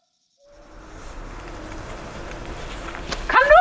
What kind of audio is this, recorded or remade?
remade